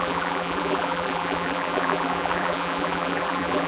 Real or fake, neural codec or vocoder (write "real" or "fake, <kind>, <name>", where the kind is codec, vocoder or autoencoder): fake, vocoder, BigVGAN v2